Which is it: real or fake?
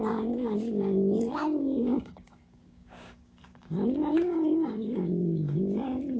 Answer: fake